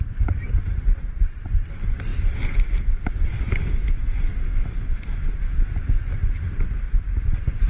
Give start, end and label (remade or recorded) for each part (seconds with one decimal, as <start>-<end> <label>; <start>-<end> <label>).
0.0-7.7 recorded